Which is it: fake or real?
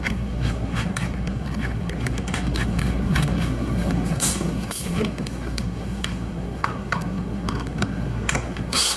fake